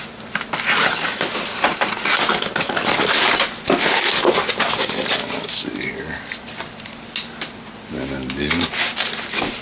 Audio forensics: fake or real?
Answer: real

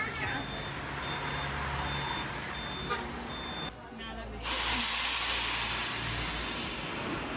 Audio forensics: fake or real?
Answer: real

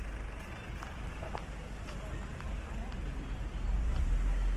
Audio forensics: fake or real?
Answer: real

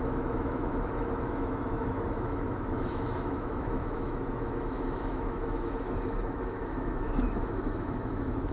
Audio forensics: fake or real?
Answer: fake